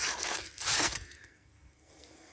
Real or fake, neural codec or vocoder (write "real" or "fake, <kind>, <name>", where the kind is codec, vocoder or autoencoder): fake, codec, SNAC